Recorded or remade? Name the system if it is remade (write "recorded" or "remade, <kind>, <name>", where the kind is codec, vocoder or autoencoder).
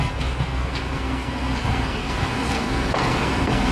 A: remade, codec, SNAC